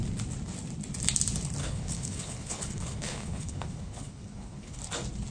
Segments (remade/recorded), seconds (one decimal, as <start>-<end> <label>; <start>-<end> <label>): 0.0-1.6 recorded; 1.6-4.8 remade; 4.8-5.3 recorded